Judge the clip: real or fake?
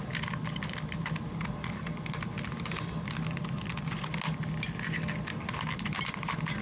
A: real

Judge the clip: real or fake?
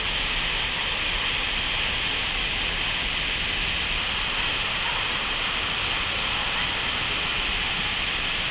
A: real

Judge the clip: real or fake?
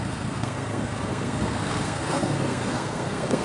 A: fake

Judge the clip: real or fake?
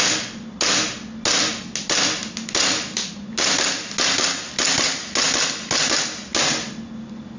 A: real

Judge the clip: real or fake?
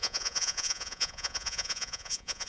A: fake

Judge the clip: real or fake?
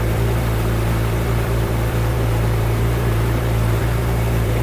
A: fake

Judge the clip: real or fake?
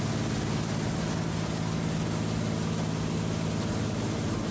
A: real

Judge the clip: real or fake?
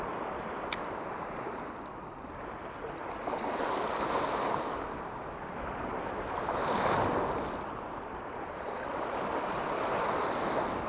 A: real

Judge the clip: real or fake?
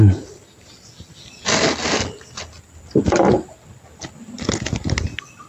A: real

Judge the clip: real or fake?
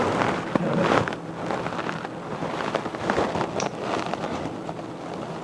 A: real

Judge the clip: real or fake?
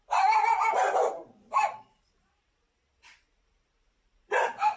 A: fake